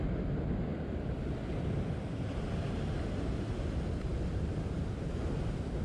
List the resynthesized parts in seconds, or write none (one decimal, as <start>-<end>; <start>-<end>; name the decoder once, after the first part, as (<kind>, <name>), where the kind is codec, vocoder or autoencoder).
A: 0.7-4.2 (vocoder, BigVGAN v2)